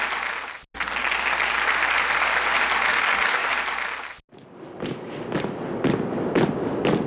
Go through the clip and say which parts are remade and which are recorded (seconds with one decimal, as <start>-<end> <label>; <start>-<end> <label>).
0.0-2.9 recorded; 2.9-3.5 remade; 3.5-7.1 recorded